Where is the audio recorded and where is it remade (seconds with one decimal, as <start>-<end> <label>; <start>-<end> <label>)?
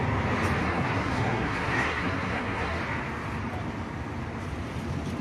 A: 0.0-0.6 recorded; 0.6-2.8 remade; 2.8-5.2 recorded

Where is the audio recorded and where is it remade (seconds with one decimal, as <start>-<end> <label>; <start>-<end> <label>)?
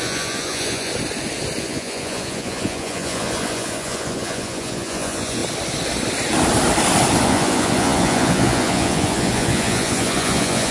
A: 0.0-0.9 remade; 0.9-1.6 recorded; 1.6-5.4 remade; 5.4-7.2 recorded; 7.2-10.7 remade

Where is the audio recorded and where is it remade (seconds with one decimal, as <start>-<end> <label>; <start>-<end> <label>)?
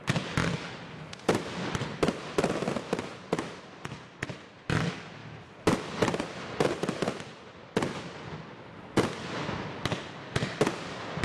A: 0.0-11.2 recorded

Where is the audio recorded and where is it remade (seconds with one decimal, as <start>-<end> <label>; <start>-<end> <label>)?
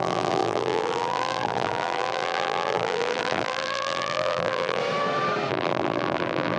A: 0.0-4.8 remade; 4.8-5.5 recorded; 5.5-6.6 remade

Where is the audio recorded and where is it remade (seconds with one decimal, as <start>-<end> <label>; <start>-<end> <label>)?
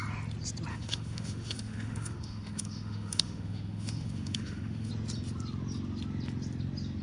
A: 0.0-0.7 recorded; 0.7-4.9 remade; 4.9-7.0 recorded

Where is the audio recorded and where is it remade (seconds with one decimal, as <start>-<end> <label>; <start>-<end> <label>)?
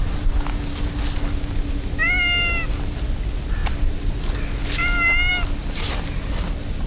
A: 0.0-6.9 recorded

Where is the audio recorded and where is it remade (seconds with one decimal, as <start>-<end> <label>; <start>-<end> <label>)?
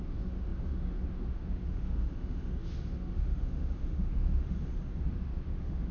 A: 0.0-4.7 remade; 4.7-5.2 recorded; 5.2-5.9 remade